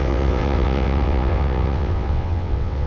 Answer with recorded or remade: remade